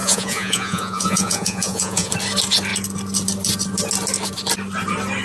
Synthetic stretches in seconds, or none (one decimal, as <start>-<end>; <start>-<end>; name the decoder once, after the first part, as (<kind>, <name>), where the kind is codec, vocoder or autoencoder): 0.0-2.1 (vocoder, Vocos)